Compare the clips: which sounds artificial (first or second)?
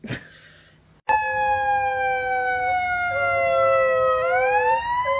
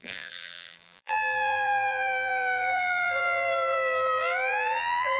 second